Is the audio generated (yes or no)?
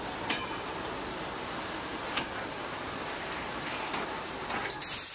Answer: no